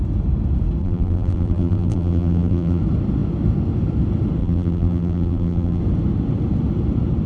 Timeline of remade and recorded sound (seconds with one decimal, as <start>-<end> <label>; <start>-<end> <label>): 0.0-0.8 recorded; 0.8-2.8 remade; 2.8-4.4 recorded; 4.4-5.8 remade; 5.8-7.3 recorded